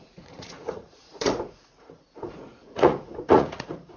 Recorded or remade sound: remade